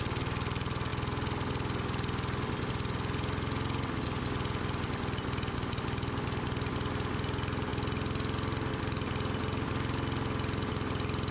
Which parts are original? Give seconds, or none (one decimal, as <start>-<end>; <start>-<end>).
0.0-11.3

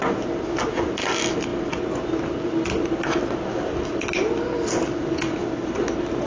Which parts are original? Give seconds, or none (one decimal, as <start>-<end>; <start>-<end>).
0.0-6.3

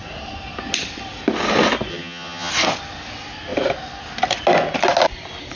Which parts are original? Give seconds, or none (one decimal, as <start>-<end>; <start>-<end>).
0.0-1.9; 2.5-5.6